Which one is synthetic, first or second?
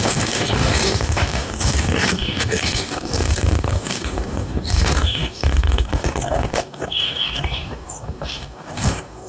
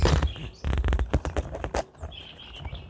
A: first